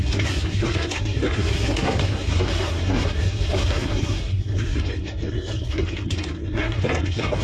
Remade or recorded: remade